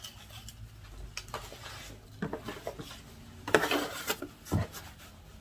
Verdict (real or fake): real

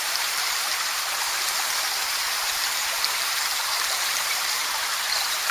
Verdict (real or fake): fake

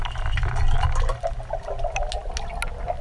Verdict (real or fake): real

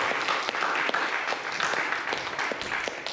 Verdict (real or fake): real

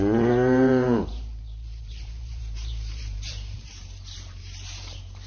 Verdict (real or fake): fake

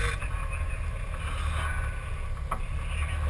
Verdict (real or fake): real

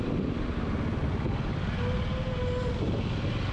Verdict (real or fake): real